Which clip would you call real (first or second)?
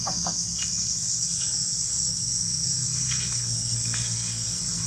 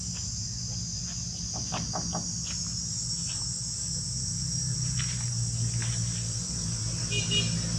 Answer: second